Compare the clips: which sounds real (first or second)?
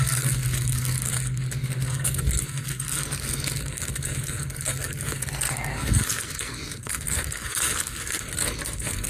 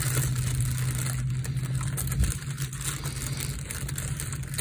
second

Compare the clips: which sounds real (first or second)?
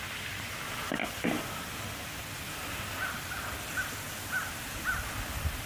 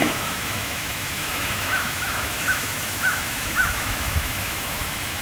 first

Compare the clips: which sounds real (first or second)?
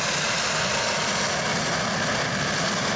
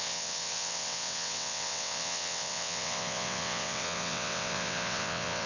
first